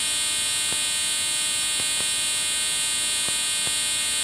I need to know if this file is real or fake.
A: real